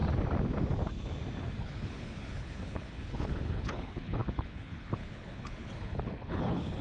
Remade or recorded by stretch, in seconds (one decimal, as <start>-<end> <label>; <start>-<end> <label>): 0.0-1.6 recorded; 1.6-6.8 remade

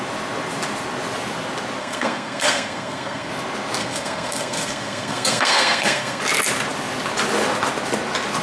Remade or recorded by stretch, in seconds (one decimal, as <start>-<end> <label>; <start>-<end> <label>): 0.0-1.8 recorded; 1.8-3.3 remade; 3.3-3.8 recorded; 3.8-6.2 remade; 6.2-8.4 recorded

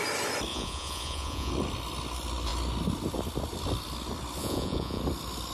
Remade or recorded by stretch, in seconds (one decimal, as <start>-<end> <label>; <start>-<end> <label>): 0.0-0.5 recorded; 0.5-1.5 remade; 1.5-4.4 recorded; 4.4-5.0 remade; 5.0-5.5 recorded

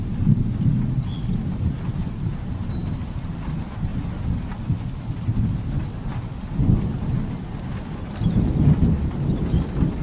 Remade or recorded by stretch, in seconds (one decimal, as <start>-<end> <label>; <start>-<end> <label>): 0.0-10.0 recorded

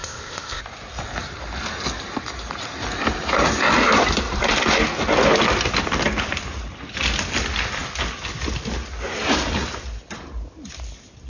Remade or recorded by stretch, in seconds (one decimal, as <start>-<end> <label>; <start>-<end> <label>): 0.0-0.6 remade; 0.6-11.3 recorded

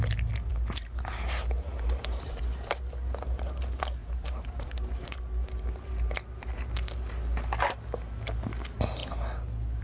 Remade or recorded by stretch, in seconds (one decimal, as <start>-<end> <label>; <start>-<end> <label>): 0.0-0.5 recorded; 0.5-2.4 remade; 2.4-4.0 recorded; 4.0-5.2 remade; 5.2-9.8 recorded